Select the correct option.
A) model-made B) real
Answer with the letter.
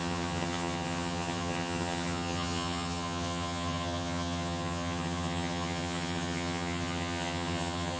A